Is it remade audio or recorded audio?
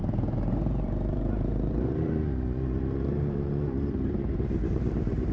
remade